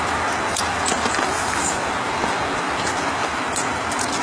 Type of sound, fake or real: real